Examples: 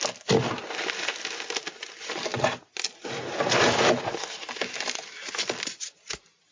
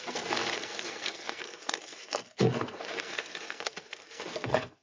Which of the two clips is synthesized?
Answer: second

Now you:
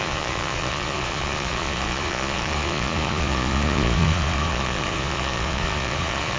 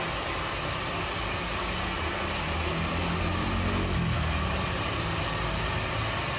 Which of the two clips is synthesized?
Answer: first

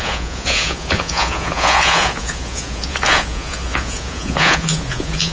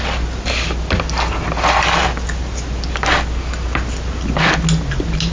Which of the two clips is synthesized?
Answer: first